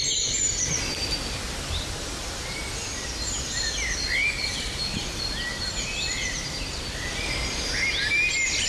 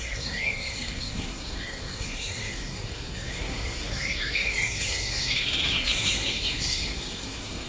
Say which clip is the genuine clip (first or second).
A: first